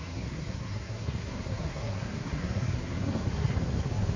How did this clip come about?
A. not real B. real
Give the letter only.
A